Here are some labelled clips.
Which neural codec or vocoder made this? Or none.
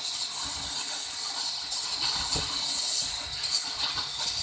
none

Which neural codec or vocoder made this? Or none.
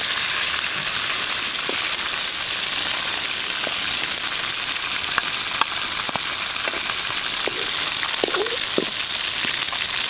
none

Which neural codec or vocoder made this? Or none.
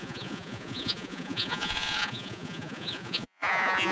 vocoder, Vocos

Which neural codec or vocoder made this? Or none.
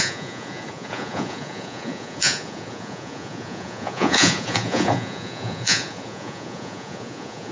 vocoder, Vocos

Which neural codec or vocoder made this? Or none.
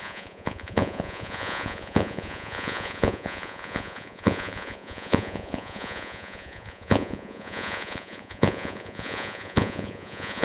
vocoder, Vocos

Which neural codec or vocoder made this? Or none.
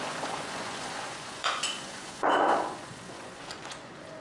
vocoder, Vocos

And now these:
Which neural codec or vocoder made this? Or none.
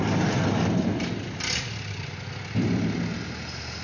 none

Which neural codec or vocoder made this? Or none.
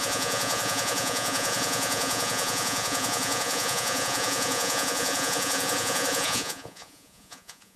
vocoder, Vocos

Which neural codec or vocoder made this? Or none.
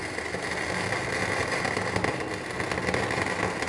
none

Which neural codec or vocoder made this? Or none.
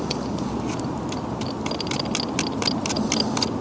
none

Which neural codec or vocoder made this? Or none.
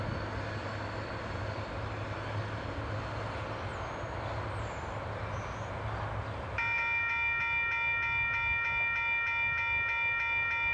none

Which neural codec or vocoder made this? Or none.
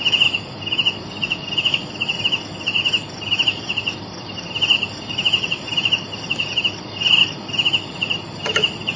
none